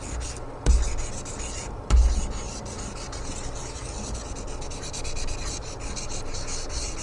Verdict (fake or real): real